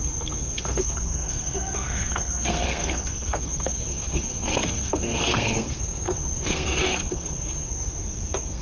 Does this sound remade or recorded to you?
remade